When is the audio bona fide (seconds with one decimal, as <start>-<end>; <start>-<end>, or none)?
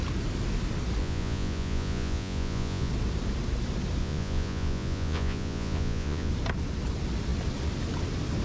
0.0-1.0; 2.9-4.0; 6.3-8.4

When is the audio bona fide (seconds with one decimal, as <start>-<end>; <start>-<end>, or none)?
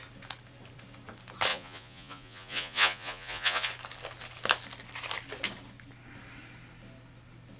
0.0-1.5; 3.7-7.6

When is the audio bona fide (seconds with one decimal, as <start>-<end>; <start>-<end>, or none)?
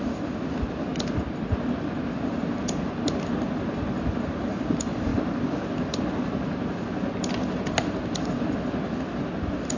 0.0-9.8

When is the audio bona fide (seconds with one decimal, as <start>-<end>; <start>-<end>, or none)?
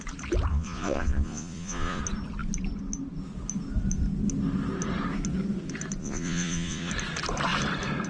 0.0-0.5; 2.0-6.0; 6.9-8.1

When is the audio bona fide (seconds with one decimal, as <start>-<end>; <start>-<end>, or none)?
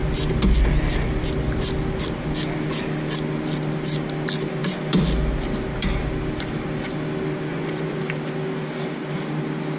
0.0-7.5; 8.0-9.8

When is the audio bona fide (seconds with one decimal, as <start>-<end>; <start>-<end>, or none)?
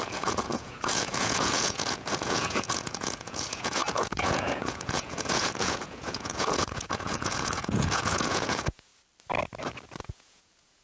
8.9-10.0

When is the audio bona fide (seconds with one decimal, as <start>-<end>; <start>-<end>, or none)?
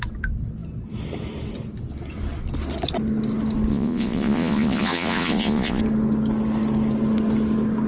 0.0-3.7; 5.8-7.9